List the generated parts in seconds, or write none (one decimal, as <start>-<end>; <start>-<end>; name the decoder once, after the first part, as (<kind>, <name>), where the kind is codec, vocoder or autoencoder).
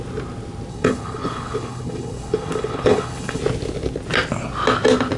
0.7-3.4 (codec, HILCodec)